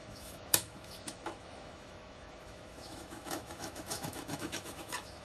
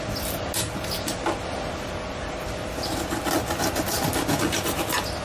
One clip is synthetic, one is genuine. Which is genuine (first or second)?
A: second